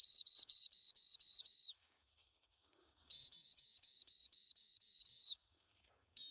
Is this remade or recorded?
remade